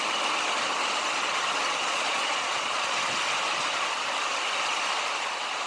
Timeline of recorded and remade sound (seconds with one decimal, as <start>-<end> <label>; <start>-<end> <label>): 0.0-1.7 recorded; 1.7-3.0 remade; 3.0-5.7 recorded